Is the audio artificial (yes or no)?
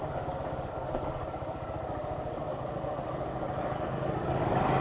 yes